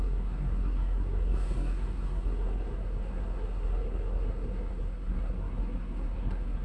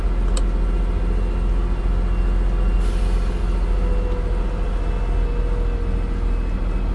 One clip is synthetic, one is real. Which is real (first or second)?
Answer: second